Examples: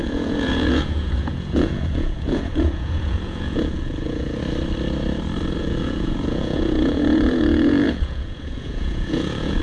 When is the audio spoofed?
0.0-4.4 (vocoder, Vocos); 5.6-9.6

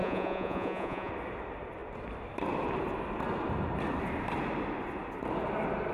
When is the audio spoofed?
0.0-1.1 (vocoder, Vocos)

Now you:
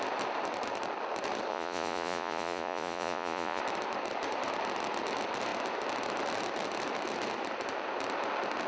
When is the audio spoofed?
1.5-3.6 (vocoder, Vocos)

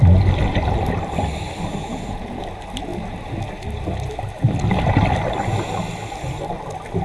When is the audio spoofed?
1.8-2.4 (vocoder, Vocos)

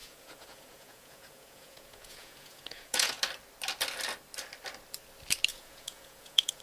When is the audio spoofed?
0.0-3.2 (vocoder, Vocos); 5.5-6.6

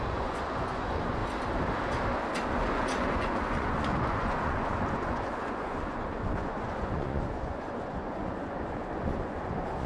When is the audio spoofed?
0.0-1.2 (vocoder, Vocos); 2.5-9.9